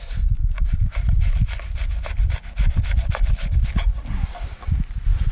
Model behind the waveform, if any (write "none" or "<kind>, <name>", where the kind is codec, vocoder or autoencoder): none